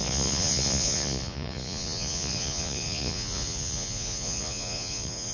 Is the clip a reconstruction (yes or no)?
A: yes